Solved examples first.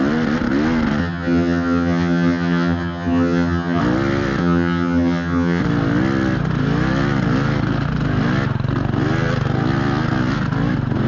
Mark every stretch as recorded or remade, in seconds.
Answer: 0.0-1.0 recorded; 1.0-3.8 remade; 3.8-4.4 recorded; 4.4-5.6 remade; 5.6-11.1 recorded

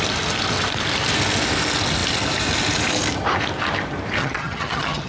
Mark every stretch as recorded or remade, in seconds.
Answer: 0.0-4.2 recorded; 4.2-5.1 remade

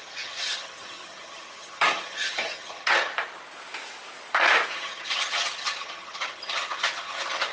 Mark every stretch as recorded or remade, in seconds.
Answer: 0.0-3.1 remade; 3.1-4.7 recorded; 4.7-7.5 remade

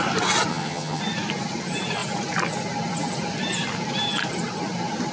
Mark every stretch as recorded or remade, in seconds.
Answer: 0.0-0.5 recorded; 0.5-1.0 remade; 1.0-5.1 recorded

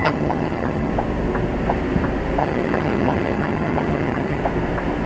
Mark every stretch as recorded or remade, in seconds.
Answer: 0.0-0.9 remade; 0.9-2.4 recorded; 2.4-4.4 remade; 4.4-5.1 recorded